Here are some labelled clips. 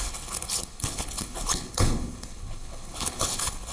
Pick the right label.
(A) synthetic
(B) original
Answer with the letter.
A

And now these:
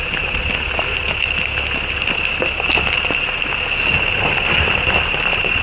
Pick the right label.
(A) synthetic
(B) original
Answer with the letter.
B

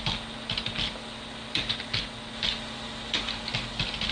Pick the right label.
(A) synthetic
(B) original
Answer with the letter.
B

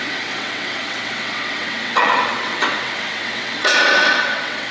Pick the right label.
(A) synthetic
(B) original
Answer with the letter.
A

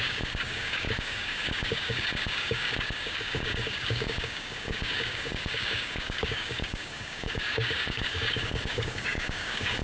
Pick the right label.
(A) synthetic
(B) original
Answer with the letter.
A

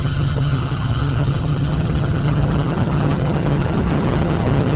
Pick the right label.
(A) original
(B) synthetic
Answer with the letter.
B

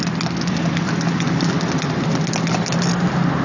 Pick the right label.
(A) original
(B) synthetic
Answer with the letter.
A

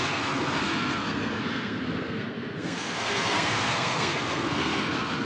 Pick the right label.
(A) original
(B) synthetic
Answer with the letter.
B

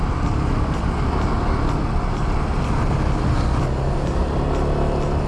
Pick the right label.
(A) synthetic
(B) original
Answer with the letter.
B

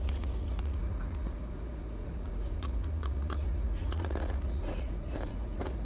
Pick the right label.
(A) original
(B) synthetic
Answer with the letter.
B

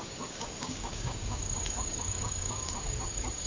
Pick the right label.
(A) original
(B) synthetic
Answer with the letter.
B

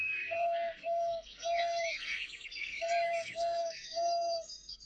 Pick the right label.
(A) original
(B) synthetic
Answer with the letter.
B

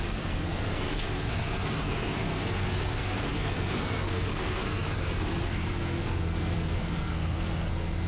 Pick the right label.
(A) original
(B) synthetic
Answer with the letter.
B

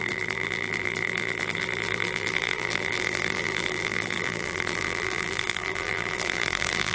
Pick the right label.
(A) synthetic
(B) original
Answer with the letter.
A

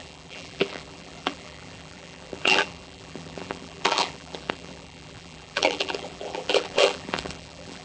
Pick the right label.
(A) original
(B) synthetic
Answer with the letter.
B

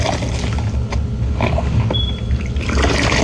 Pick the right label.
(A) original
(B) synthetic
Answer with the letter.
A